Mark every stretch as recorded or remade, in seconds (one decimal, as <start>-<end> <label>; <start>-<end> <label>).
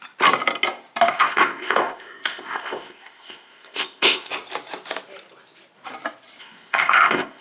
0.0-1.1 recorded; 1.1-4.3 remade; 4.3-6.4 recorded; 6.4-7.4 remade